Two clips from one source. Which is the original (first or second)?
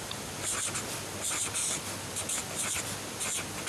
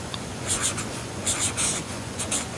first